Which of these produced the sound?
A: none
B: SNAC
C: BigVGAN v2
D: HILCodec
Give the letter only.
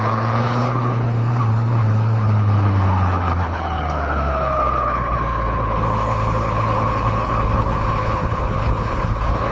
D